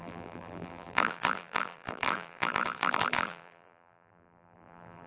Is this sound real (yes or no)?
no